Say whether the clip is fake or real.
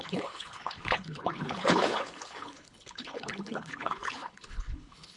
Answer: fake